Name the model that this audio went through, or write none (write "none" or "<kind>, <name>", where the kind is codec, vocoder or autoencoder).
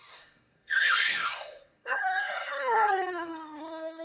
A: codec, SNAC